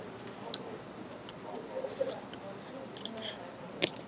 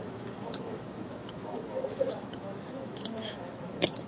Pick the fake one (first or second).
second